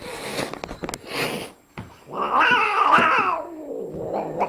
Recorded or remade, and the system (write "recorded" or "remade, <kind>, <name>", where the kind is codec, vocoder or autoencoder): recorded